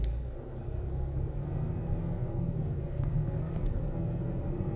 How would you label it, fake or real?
fake